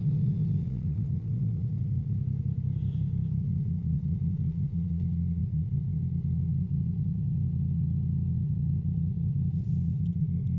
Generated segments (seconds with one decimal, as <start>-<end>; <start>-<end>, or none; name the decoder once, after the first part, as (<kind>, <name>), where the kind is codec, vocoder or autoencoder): 0.0-2.2 (vocoder, Vocos); 3.4-10.6